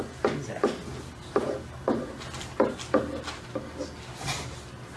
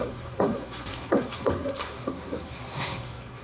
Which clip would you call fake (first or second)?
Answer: second